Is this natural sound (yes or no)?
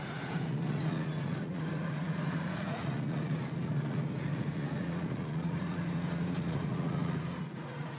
no